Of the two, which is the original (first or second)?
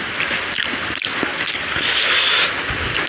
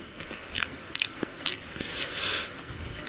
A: first